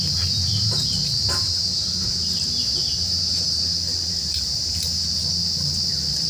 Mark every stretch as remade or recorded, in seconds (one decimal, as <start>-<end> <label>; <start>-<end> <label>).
0.0-1.4 recorded; 1.4-5.2 remade; 5.2-6.3 recorded